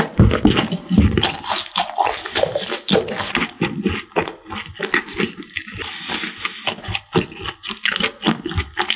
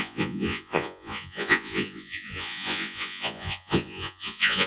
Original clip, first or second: first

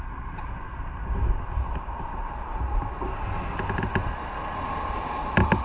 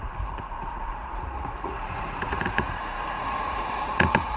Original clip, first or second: first